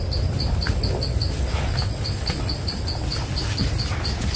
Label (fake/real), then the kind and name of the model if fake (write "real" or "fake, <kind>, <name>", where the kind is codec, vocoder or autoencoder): real